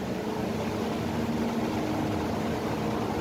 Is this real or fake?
real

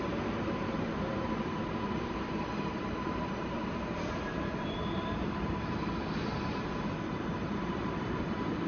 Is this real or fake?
fake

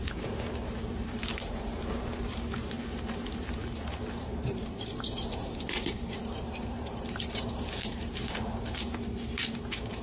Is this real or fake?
fake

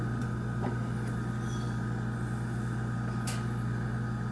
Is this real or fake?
real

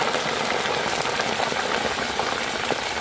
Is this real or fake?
real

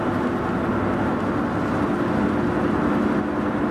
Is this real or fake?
real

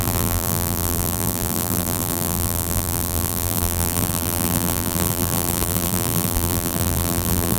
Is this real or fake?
fake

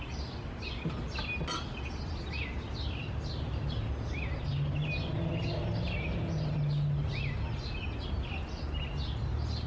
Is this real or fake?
real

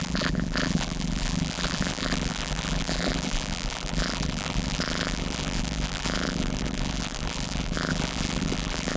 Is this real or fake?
fake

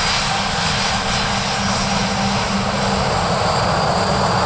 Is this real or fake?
real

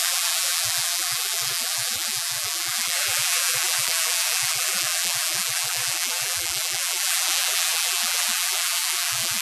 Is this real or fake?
fake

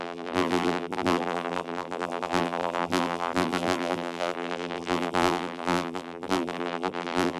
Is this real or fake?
fake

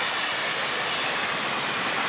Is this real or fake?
real